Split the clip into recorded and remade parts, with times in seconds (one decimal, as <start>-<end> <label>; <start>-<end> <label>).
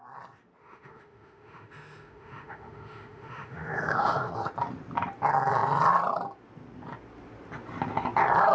0.0-0.6 recorded; 0.6-4.3 remade; 4.3-8.5 recorded